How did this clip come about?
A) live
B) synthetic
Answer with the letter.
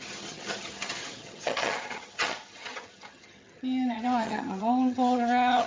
B